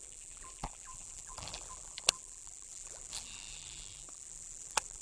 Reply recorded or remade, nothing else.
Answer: remade